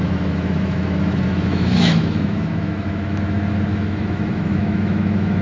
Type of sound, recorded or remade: remade